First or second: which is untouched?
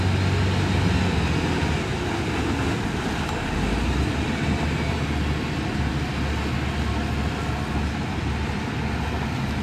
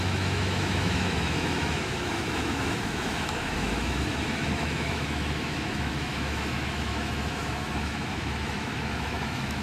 first